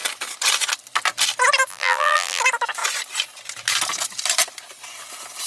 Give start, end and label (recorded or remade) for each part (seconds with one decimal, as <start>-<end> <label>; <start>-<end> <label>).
0.0-1.7 recorded; 1.7-2.4 remade; 2.4-5.5 recorded